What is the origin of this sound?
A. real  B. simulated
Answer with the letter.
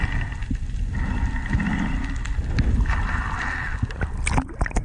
A